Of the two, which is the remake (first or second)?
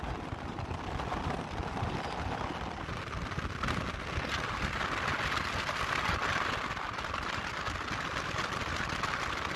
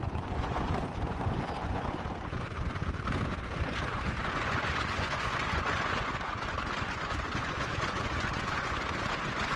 second